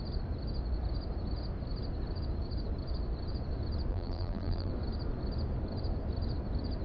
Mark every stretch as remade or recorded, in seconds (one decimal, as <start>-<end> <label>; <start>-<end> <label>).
0.0-3.9 recorded; 3.9-4.7 remade; 4.7-6.8 recorded